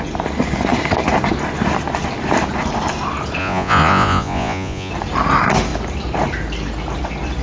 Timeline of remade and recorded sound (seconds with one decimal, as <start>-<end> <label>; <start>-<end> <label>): 0.0-3.4 recorded; 3.4-4.9 remade; 4.9-7.4 recorded

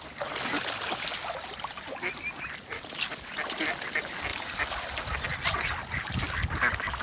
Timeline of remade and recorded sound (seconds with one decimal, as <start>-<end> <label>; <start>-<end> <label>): 0.0-7.0 recorded

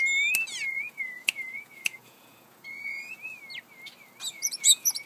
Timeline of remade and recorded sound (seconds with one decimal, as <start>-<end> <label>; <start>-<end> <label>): 0.0-0.7 recorded; 0.7-3.4 remade; 3.4-4.3 recorded; 4.3-5.1 remade

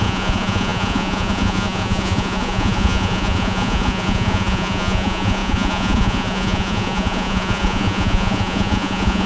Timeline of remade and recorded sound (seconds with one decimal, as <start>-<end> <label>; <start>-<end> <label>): 0.0-9.3 remade

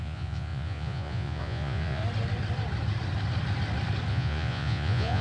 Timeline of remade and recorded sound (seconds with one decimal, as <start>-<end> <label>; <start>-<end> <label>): 0.0-2.0 remade; 2.0-4.1 recorded; 4.1-5.2 remade

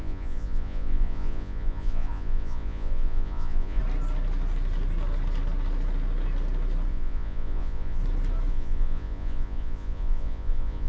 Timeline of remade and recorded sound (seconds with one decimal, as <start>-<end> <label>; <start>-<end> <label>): 0.0-3.8 remade; 3.8-6.9 recorded; 6.9-8.0 remade; 8.0-8.5 recorded; 8.5-10.9 remade

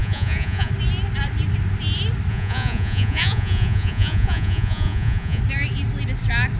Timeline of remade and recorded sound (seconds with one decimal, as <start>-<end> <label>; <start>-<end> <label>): 0.0-0.7 remade; 0.7-2.3 recorded; 2.3-5.4 remade; 5.4-6.6 recorded

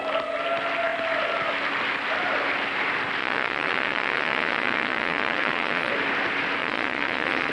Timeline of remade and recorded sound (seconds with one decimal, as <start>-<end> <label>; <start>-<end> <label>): 0.0-3.2 recorded; 3.2-5.9 remade; 5.9-6.6 recorded; 6.6-7.5 remade